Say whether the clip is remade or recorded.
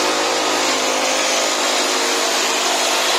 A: recorded